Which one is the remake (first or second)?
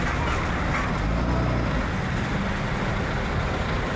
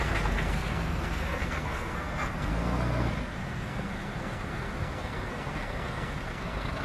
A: second